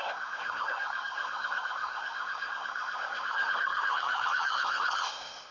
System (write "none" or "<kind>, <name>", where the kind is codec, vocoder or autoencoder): codec, SNAC